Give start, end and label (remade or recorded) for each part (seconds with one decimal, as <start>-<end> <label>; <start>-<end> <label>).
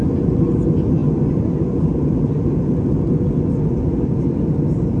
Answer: 0.0-5.0 recorded